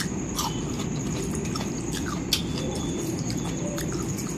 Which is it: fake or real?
real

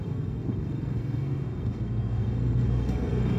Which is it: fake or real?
fake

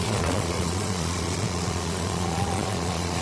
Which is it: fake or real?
fake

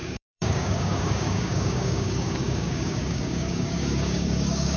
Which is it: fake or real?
fake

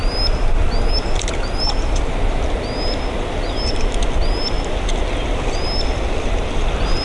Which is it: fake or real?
real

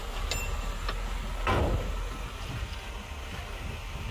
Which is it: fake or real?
real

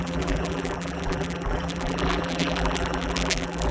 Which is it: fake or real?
fake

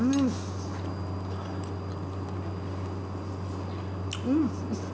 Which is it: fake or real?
real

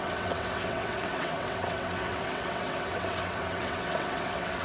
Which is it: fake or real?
fake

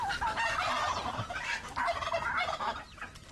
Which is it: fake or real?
real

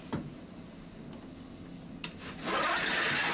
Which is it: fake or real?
real